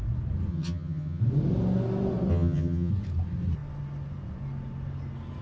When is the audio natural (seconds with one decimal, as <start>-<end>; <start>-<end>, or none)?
0.0-0.5; 1.2-2.3; 2.9-5.4